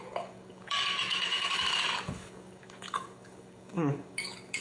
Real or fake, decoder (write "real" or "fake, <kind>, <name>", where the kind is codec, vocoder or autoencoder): fake, codec, DAC